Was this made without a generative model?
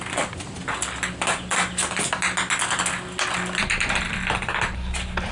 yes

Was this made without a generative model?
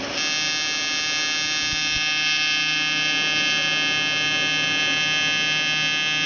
yes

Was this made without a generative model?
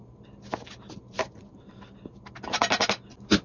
yes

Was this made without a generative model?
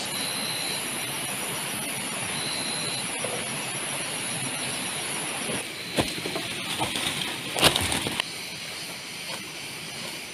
yes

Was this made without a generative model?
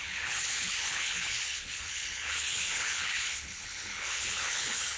no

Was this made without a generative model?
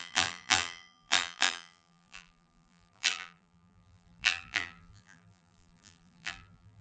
no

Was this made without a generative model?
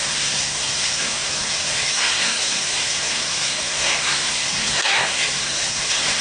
no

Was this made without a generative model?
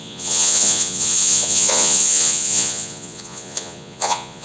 no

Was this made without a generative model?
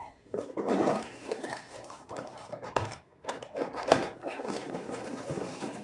no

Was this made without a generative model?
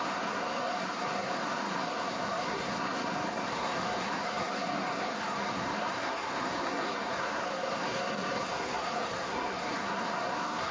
no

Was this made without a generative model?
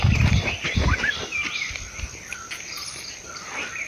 yes